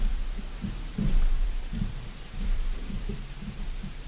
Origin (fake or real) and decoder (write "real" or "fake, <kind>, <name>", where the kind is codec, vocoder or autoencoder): fake, vocoder, BigVGAN v2